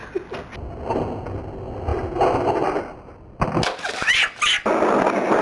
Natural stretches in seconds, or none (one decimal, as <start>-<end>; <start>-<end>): 0.0-5.4

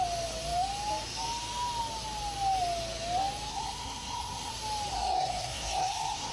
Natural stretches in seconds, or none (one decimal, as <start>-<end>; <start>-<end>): 0.0-3.5; 4.5-4.9

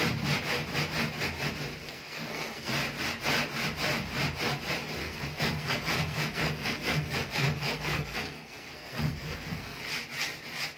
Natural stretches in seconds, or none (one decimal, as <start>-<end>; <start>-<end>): 0.0-1.8; 2.7-5.0; 9.8-10.8

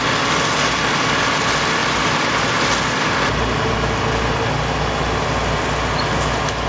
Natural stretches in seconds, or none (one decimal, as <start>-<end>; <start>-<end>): 0.0-6.7

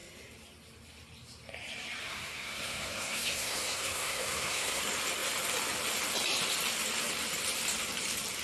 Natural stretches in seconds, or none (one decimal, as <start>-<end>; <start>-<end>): 0.0-2.0; 4.8-8.4

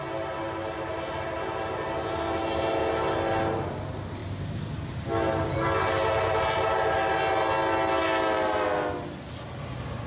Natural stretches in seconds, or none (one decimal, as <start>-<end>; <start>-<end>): 0.0-10.1

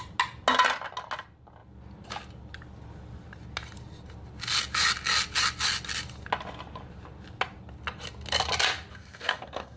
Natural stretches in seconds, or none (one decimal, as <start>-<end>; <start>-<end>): 0.0-8.9

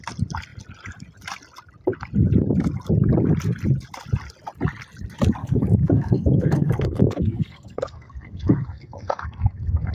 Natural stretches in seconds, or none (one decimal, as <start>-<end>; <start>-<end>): 0.0-5.4